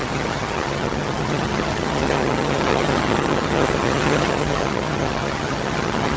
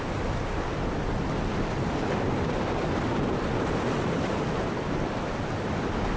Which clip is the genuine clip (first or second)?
second